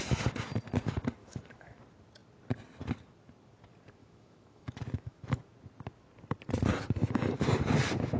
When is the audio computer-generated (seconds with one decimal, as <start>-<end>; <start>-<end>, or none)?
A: 1.2-1.8; 4.0-5.4; 6.7-7.4